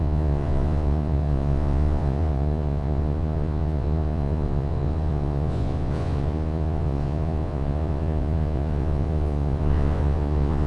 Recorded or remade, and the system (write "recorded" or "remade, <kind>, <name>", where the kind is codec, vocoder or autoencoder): remade, vocoder, Vocos